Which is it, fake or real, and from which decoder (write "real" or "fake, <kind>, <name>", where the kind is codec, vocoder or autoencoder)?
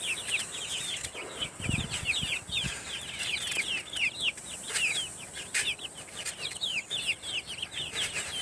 real